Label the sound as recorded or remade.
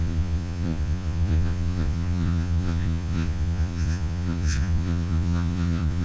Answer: remade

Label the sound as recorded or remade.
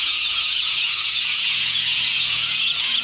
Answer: remade